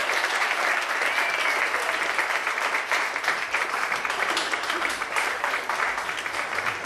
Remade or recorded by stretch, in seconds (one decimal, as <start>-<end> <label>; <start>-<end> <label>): 0.0-0.7 remade; 0.7-2.4 recorded; 2.4-5.6 remade; 5.6-6.9 recorded